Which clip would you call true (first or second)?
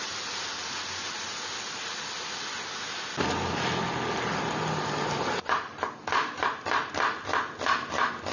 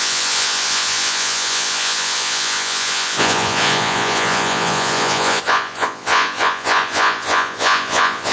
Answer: first